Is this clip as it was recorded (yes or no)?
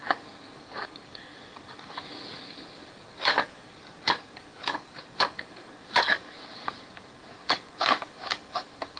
no